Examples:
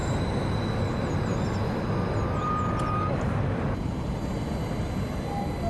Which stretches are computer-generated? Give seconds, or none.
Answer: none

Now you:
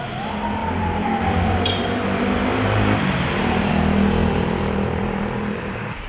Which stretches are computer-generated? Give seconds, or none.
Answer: 0.6-3.7 (vocoder, BigVGAN v2); 4.2-6.1

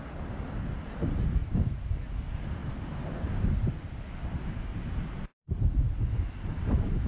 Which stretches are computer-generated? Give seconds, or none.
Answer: 1.4-2.0 (vocoder, BigVGAN v2); 2.6-3.2; 4.7-5.2